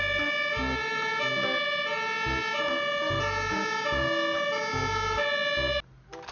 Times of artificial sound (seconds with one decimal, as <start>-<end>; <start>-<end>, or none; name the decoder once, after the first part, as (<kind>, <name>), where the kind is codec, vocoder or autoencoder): none